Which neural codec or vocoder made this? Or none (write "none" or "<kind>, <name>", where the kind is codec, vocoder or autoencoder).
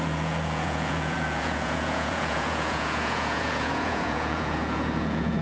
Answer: vocoder, Vocos